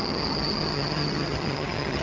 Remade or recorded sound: remade